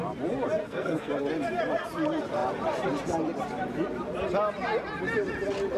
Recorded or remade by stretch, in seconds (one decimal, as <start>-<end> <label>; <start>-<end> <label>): 0.0-0.6 recorded; 0.6-1.1 remade; 1.1-5.8 recorded